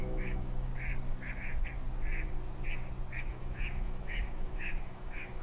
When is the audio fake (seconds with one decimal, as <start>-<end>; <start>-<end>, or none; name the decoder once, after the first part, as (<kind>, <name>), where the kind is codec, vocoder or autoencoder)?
0.0-0.7 (autoencoder, DAC-VAE); 3.2-5.4